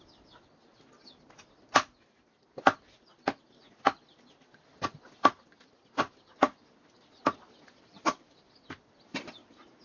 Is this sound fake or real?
real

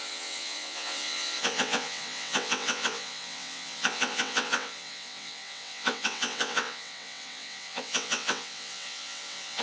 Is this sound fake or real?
fake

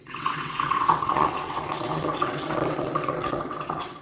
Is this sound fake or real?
fake